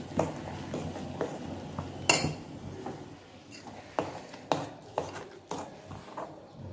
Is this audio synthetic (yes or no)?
no